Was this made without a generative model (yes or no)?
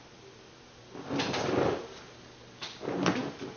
yes